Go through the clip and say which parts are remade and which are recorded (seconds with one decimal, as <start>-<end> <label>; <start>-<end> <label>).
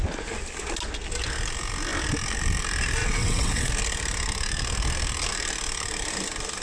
0.0-3.0 recorded; 3.0-3.7 remade; 3.7-6.6 recorded